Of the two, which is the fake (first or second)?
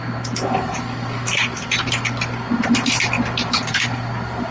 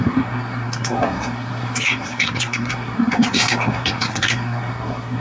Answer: second